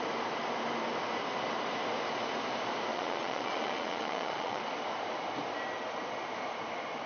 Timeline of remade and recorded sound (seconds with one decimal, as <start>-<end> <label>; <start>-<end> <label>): 0.0-2.9 recorded; 2.9-4.6 remade; 4.6-7.1 recorded